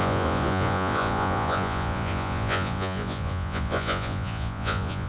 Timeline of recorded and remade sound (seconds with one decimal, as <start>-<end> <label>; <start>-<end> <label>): 0.0-5.1 remade